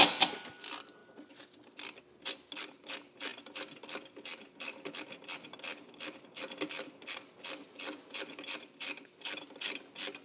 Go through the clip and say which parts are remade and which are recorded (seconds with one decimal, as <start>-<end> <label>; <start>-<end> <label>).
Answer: 0.0-10.2 recorded